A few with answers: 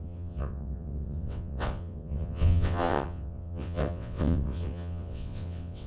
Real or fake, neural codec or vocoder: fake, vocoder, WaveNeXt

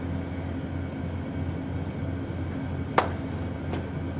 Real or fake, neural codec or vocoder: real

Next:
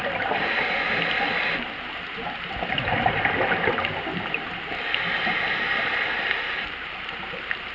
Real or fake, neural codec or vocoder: real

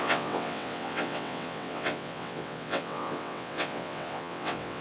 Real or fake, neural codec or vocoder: fake, vocoder, WaveNeXt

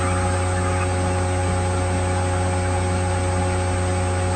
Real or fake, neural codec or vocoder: real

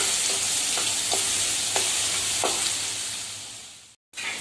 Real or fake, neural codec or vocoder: real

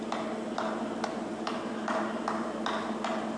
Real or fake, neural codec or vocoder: real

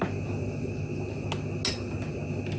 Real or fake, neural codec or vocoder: real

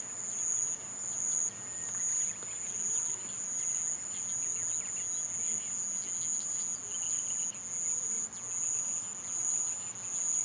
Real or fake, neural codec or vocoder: real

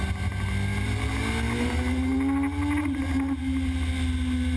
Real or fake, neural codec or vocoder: real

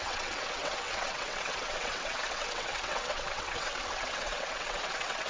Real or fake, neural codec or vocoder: fake, vocoder, WaveNeXt